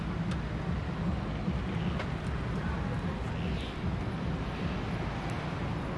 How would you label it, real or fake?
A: real